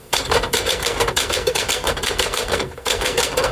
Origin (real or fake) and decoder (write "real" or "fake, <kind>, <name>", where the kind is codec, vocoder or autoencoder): fake, codec, SNAC